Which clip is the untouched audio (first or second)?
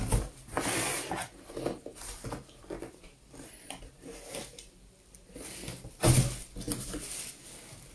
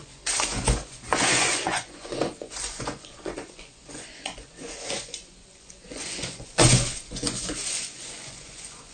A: first